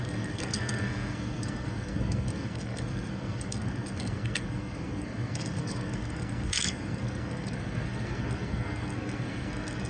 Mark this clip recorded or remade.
remade